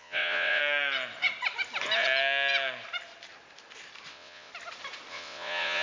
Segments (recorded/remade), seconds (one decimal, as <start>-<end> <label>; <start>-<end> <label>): 0.0-0.6 remade; 0.6-4.1 recorded; 4.1-4.5 remade; 4.5-5.1 recorded; 5.1-5.8 remade